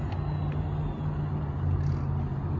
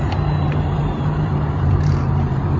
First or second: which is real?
first